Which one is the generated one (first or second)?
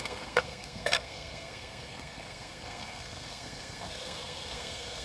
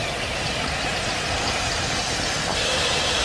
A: first